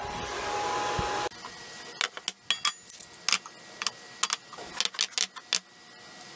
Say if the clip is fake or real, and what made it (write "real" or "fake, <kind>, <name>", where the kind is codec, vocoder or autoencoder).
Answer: real